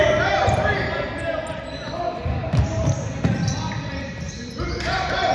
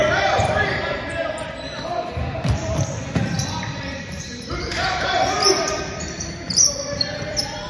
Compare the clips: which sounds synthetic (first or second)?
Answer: second